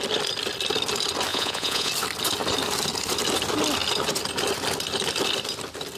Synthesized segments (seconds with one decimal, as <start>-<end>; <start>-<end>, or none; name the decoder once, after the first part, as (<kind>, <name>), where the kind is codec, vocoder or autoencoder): 1.3-1.9 (vocoder, Vocos)